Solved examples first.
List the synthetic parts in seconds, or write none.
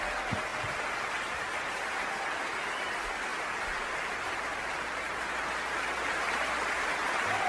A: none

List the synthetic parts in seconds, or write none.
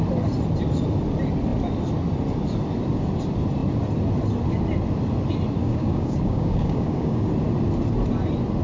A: 5.6-7.3 (codec, DAC)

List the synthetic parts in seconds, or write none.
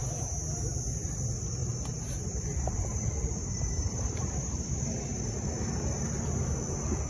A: 1.6-5.3 (vocoder, BigVGAN v2)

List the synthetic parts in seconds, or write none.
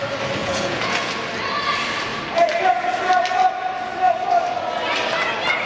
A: 0.4-1.1 (vocoder, Vocos)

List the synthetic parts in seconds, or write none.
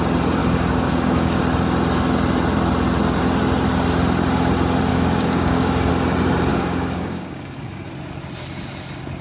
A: 0.4-1.4 (codec, DAC); 4.9-5.9; 6.5-7.9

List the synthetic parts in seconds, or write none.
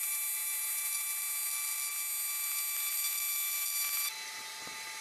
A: none